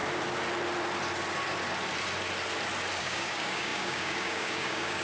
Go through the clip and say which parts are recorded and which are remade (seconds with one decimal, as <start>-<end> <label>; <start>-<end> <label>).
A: 0.0-3.0 recorded; 3.0-5.0 remade